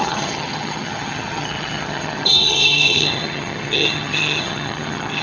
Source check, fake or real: fake